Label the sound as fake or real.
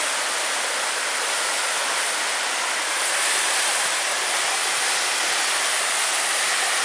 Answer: real